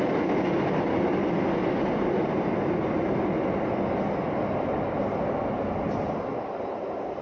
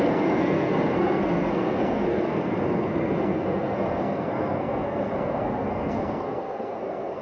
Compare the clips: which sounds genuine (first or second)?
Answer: first